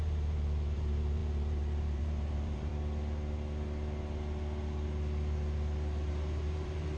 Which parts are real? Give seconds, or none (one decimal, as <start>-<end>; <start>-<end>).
2.7-6.1